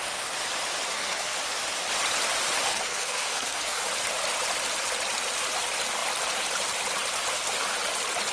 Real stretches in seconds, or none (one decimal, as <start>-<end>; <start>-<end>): 0.0-0.9; 1.4-2.7; 3.8-8.3